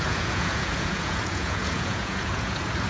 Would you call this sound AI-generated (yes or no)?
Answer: yes